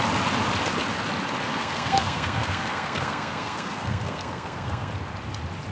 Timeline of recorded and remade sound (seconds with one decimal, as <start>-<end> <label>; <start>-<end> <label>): 0.0-1.5 recorded; 1.5-4.9 remade; 4.9-5.7 recorded